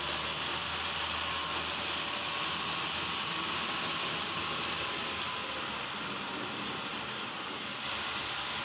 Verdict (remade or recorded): recorded